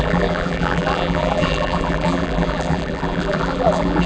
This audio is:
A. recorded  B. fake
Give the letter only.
B